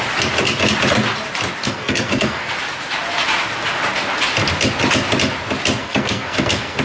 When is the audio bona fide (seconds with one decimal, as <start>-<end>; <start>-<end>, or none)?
0.0-1.6; 2.6-5.8